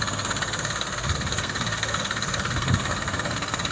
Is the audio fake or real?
fake